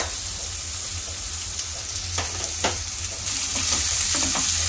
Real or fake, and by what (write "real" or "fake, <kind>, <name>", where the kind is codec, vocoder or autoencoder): fake, vocoder, BigVGAN v2